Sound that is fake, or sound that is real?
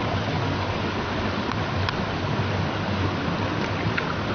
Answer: real